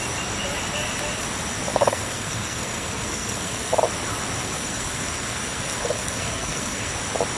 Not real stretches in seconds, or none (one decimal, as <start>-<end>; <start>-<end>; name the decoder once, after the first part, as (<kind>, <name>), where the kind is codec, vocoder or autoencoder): 1.7-3.7 (codec, SNAC); 4.4-6.9